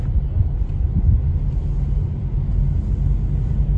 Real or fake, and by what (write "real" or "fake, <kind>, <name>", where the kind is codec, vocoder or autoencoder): real